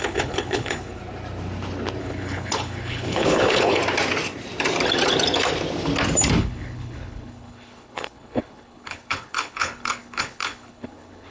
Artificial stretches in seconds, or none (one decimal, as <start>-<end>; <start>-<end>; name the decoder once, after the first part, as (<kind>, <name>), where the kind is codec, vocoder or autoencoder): 0.0-1.0 (codec, HILCodec); 2.0-3.8; 6.4-11.3